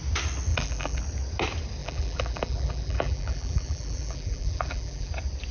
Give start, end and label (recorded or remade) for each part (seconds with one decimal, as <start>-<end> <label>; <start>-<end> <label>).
0.0-0.5 recorded; 0.5-1.0 remade; 1.0-1.8 recorded; 1.8-5.1 remade; 5.1-5.5 recorded